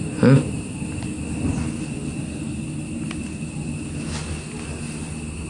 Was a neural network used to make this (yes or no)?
no